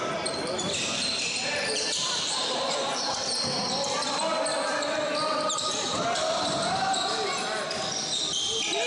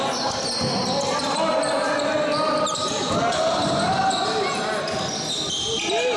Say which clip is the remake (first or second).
first